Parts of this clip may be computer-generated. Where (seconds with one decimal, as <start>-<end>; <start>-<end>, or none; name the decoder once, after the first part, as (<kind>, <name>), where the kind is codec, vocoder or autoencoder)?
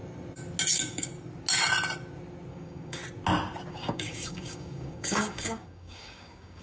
0.7-1.1 (codec, DAC); 2.5-3.0; 3.7-6.6